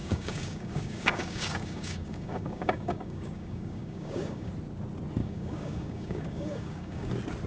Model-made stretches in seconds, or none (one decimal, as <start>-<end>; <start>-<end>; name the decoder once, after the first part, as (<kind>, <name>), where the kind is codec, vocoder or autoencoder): 0.0-4.5 (codec, DAC); 5.2-7.1